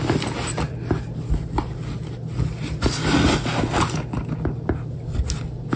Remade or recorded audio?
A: recorded